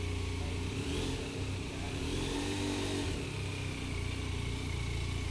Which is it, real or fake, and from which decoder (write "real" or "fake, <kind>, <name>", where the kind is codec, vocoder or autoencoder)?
real